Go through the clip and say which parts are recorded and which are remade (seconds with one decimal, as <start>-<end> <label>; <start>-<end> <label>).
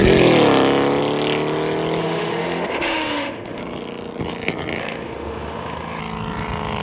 0.0-2.0 recorded; 2.0-3.6 remade; 3.6-4.8 recorded; 4.8-6.0 remade; 6.0-6.8 recorded